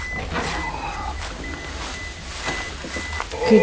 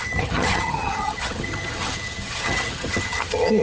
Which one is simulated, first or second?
second